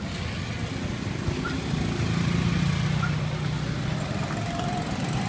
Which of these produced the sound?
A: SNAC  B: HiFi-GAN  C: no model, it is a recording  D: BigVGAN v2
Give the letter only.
C